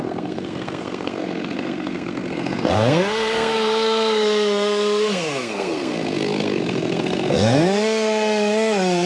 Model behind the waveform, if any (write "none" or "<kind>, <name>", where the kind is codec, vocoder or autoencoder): codec, SNAC